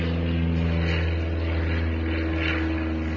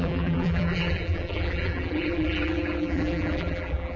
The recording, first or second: first